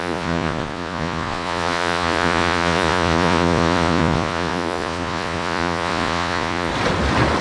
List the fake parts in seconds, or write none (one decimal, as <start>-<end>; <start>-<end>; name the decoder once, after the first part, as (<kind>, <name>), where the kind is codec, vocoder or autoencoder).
0.0-6.7 (vocoder, Vocos)